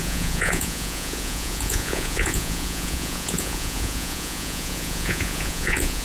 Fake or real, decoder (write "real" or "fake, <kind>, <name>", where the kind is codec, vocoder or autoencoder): fake, vocoder, Vocos